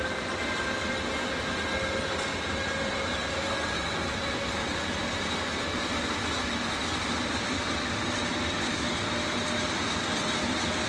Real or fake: real